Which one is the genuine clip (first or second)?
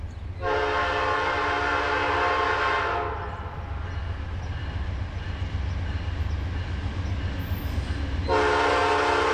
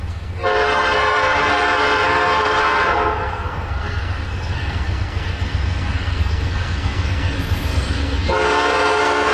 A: first